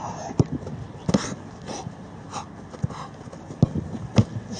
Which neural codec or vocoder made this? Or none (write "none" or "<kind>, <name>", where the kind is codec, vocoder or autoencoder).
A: none